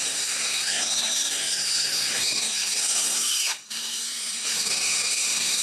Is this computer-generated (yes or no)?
yes